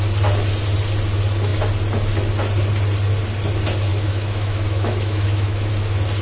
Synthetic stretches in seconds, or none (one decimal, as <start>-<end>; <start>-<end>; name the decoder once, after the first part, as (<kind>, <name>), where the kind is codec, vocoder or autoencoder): 3.9-5.7 (autoencoder, DAC-VAE)